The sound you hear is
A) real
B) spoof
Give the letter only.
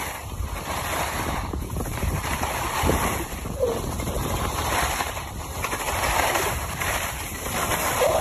B